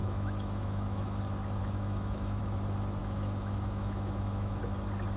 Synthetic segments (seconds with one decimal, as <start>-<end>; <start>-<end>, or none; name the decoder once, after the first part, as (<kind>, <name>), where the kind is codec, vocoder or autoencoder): 0.0-1.2 (autoencoder, DAC-VAE); 1.6-2.4; 3.0-4.6